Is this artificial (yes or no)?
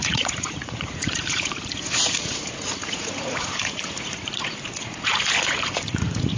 yes